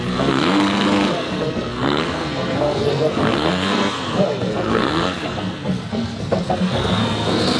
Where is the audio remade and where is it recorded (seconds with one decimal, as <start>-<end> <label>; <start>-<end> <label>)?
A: 0.0-7.6 remade